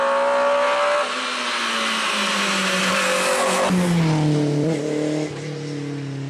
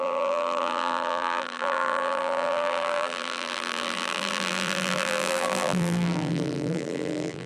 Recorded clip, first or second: first